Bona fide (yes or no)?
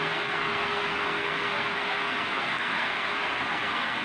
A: no